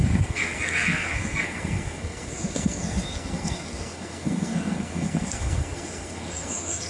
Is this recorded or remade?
remade